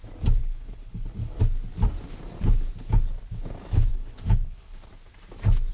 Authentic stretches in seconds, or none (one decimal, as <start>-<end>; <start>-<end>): 0.0-0.4; 1.4-3.9; 4.9-5.7